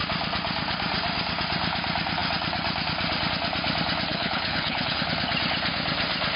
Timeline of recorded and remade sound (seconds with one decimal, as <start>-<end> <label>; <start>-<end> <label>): 0.0-4.1 recorded; 4.1-5.0 remade; 5.0-6.4 recorded